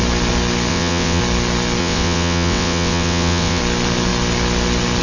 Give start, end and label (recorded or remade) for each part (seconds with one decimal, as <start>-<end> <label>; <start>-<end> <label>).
0.0-0.7 recorded; 0.7-1.2 remade; 1.2-1.8 recorded; 1.8-3.6 remade; 3.6-5.0 recorded